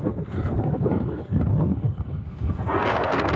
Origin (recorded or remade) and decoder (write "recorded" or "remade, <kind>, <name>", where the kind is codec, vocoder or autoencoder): remade, codec, SNAC